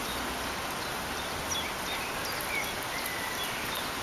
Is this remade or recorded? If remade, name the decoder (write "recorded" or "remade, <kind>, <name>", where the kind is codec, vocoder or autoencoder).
recorded